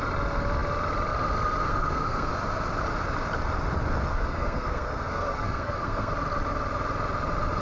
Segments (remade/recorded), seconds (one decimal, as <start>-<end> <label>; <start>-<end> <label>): 0.0-1.6 recorded; 1.6-2.3 remade; 2.3-4.1 recorded; 4.1-6.1 remade; 6.1-7.6 recorded